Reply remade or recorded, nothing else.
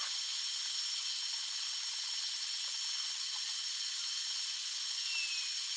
recorded